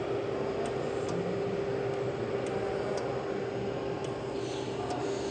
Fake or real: real